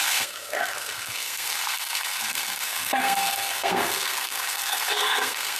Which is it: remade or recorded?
remade